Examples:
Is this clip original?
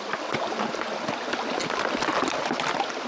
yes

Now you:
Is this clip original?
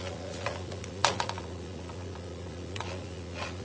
no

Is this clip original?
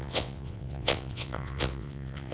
no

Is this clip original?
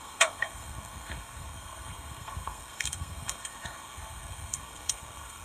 no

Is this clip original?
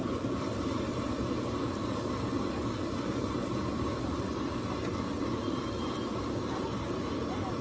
yes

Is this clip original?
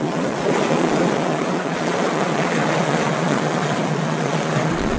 no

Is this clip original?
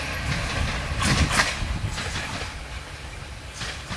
yes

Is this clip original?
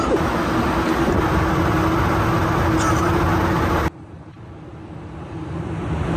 yes